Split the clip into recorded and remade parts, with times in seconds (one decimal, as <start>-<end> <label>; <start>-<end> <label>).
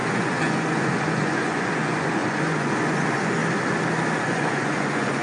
0.0-3.4 remade; 3.4-4.2 recorded; 4.2-5.2 remade